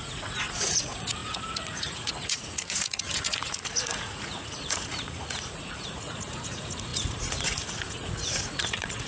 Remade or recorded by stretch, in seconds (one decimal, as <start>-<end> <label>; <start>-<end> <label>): 0.0-9.1 remade

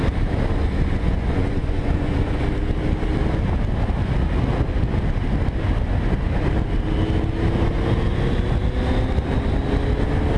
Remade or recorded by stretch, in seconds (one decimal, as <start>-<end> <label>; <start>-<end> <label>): 0.0-0.6 recorded; 0.6-2.4 remade; 2.4-10.4 recorded

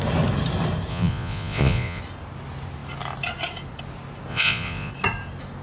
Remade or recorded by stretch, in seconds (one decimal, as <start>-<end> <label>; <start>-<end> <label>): 0.0-0.9 recorded; 0.9-2.0 remade; 2.0-4.3 recorded; 4.3-4.9 remade; 4.9-5.6 recorded

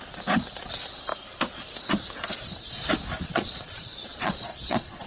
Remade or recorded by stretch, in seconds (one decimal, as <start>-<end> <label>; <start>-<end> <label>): 0.0-3.3 recorded; 3.3-5.1 remade

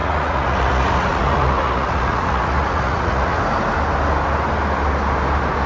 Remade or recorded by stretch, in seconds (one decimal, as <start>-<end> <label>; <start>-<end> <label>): 0.0-3.4 remade; 3.4-5.7 recorded

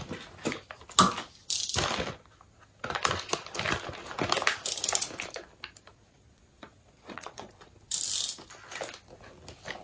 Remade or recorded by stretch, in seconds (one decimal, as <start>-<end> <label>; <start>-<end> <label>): 0.0-5.9 recorded; 5.9-7.5 remade; 7.5-9.8 recorded